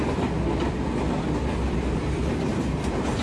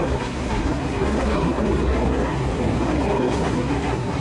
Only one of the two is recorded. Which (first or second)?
first